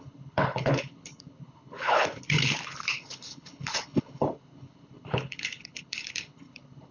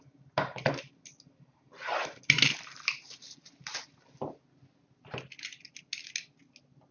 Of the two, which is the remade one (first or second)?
first